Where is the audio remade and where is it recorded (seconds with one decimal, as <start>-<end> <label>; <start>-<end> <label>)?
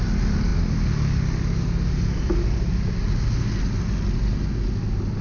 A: 0.0-5.2 recorded